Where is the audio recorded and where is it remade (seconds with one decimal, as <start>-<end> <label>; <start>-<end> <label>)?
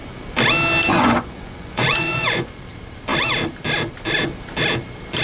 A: 0.0-0.9 recorded; 0.9-2.6 remade; 2.6-5.2 recorded